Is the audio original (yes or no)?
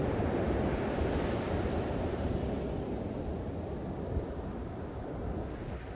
yes